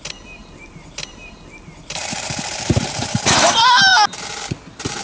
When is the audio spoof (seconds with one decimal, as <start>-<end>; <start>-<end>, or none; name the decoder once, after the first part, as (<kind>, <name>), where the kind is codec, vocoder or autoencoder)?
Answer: 0.4-3.4 (vocoder, BigVGAN v2)